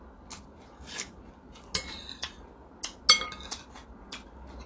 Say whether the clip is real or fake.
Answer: real